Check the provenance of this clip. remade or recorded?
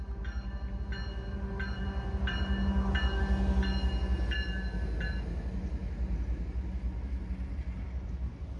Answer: recorded